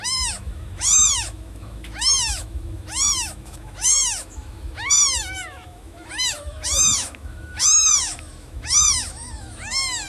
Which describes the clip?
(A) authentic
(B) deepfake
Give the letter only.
B